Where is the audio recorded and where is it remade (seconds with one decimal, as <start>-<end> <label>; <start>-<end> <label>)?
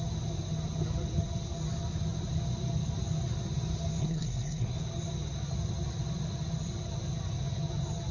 0.0-4.0 recorded; 4.0-4.8 remade; 4.8-8.1 recorded